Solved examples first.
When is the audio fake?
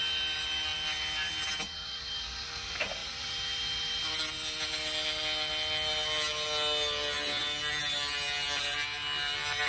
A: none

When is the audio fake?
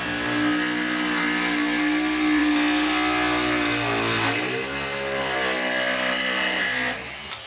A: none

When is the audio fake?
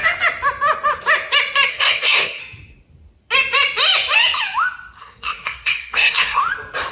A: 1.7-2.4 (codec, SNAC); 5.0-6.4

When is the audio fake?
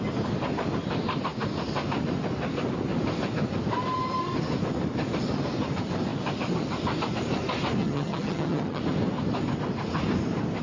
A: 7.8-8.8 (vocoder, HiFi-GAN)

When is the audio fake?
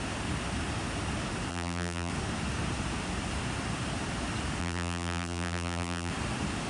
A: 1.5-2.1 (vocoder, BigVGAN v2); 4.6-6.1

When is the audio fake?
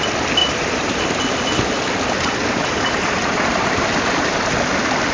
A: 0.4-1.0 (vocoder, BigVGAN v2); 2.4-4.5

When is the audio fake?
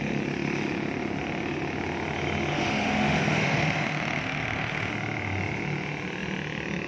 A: 2.5-4.9 (autoencoder, DAC-VAE)